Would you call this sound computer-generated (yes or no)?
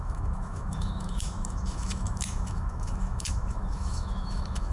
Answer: yes